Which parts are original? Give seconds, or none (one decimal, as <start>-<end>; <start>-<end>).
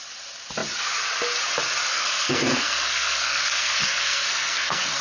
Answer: 0.0-1.9